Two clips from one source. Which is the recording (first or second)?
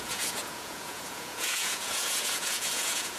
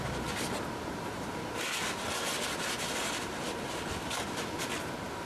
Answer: second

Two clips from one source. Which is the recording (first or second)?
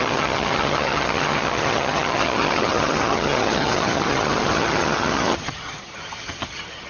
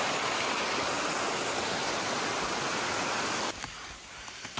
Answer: second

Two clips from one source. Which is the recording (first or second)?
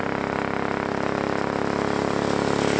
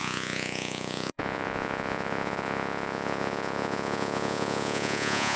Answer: first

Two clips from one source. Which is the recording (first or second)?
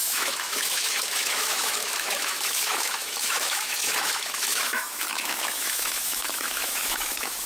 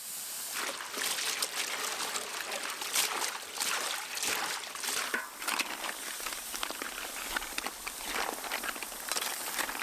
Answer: second